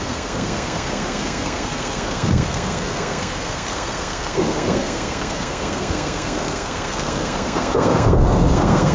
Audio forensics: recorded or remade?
remade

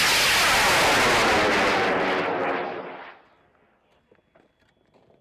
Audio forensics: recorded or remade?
recorded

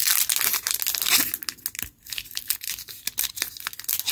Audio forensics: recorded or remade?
recorded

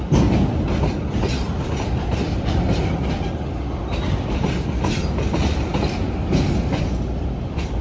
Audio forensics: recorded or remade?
recorded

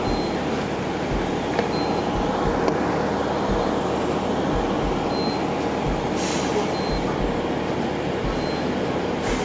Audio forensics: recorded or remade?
recorded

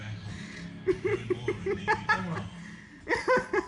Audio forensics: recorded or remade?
recorded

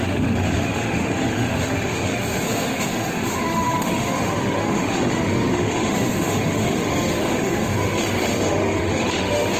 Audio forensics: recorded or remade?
remade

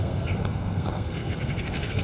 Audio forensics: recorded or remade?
remade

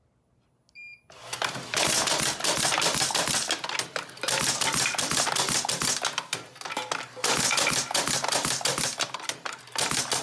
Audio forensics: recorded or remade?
recorded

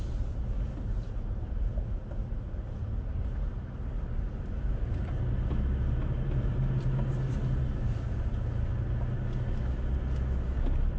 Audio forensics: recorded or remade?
recorded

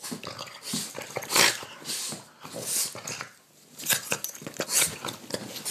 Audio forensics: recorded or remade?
recorded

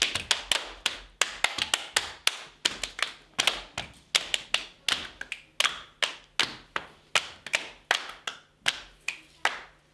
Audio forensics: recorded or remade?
recorded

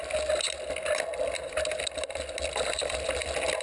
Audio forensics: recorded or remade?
recorded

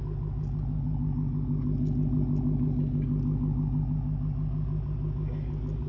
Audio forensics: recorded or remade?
recorded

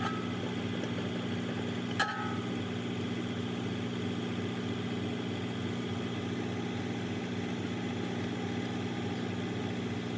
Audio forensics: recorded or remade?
recorded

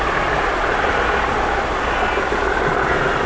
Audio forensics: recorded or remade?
recorded